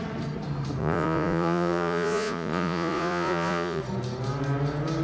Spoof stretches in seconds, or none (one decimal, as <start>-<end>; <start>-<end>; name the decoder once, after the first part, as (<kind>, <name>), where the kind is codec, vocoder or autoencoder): 0.8-3.8 (vocoder, Vocos)